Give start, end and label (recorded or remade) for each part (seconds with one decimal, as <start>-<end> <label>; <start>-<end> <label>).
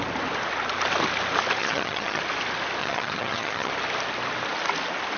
0.0-1.6 recorded; 1.6-2.2 remade; 2.2-2.8 recorded; 2.8-3.7 remade; 3.7-5.2 recorded